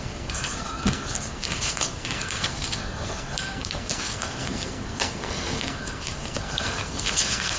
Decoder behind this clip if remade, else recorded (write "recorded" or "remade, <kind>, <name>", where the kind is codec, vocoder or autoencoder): remade, codec, SNAC